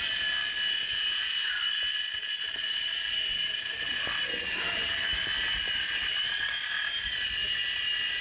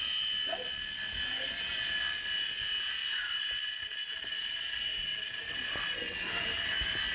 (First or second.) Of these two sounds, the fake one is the first